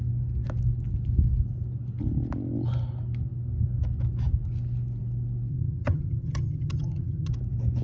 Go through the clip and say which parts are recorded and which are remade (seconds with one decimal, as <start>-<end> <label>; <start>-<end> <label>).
0.0-5.5 recorded; 5.5-7.3 remade; 7.3-7.8 recorded